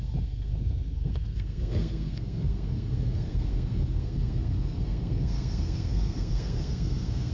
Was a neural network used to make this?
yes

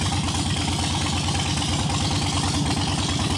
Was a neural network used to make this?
no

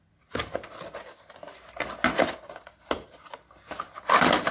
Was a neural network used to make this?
no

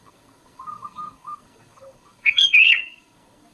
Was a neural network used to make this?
yes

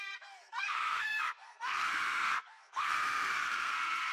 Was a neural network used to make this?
yes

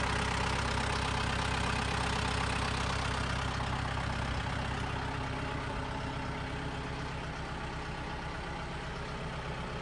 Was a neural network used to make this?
no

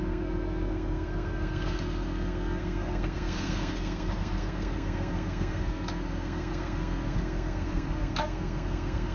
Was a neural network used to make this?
yes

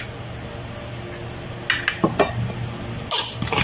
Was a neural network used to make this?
no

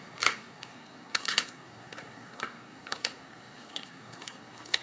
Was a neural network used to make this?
yes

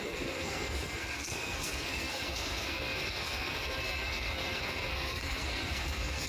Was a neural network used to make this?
yes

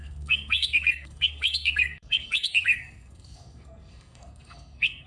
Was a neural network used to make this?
yes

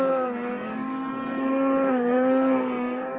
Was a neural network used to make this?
yes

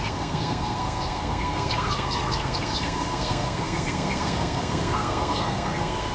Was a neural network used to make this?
yes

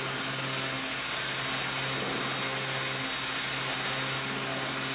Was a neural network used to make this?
no